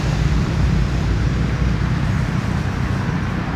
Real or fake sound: fake